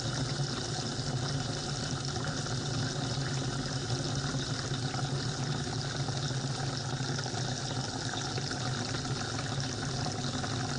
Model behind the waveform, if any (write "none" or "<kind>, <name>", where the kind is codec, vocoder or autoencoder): none